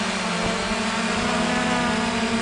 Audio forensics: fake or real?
real